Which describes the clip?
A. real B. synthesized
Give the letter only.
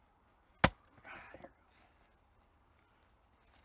A